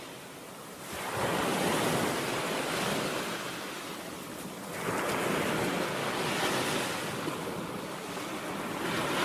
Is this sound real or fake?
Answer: real